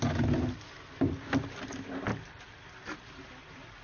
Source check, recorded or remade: recorded